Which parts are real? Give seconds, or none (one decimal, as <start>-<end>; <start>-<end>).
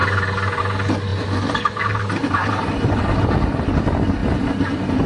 0.0-1.1; 3.0-4.2